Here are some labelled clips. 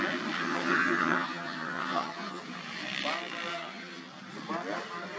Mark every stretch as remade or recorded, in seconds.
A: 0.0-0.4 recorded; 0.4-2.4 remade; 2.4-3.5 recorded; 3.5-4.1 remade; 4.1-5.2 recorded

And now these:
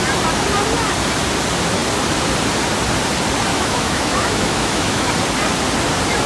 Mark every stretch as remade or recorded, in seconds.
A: 0.0-3.5 recorded; 3.5-5.1 remade; 5.1-6.3 recorded

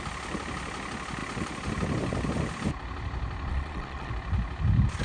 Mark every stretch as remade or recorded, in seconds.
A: 0.0-3.5 recorded; 3.5-4.1 remade; 4.1-5.0 recorded

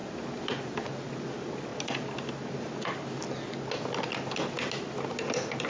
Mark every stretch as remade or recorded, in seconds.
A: 0.0-5.7 recorded